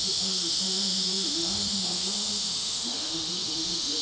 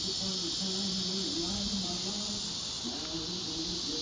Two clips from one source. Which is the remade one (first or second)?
first